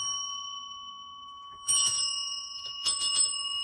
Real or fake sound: fake